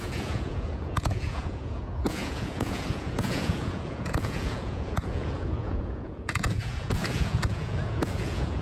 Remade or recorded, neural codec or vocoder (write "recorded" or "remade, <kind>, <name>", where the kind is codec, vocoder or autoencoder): remade, vocoder, Vocos